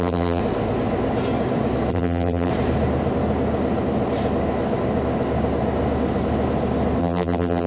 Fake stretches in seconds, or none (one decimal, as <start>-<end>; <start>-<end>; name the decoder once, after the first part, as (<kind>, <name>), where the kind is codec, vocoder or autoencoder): 0.0-0.4 (vocoder, BigVGAN v2); 1.9-2.5; 7.0-7.7